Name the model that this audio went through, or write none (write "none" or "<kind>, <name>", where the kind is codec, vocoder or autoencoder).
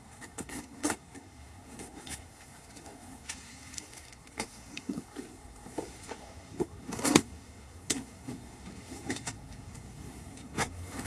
codec, SNAC